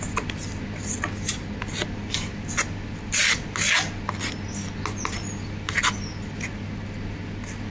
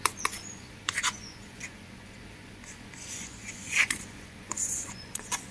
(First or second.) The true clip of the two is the first